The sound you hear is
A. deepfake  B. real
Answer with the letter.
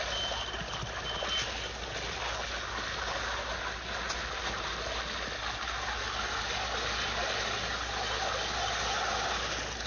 B